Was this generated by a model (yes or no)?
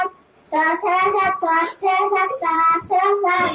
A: yes